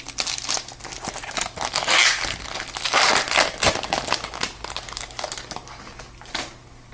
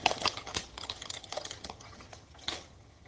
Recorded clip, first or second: first